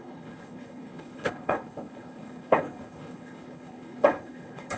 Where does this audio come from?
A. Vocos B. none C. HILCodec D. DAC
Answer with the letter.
C